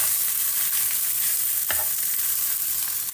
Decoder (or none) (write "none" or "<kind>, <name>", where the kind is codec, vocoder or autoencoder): none